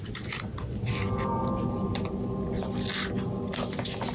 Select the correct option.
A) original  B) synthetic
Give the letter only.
A